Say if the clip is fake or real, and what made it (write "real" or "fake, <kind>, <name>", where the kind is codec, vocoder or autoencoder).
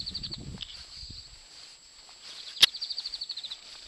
real